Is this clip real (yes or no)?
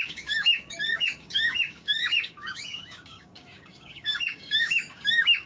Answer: no